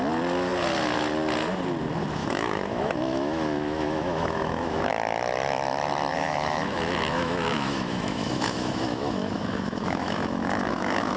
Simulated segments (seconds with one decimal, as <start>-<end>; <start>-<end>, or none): 2.2-4.9; 6.1-11.2